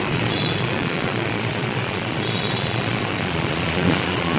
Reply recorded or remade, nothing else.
remade